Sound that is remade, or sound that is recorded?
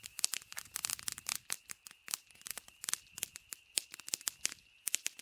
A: recorded